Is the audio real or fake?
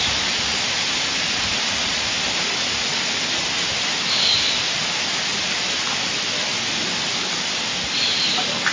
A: real